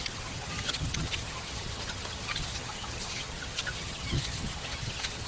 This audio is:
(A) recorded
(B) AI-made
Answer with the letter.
B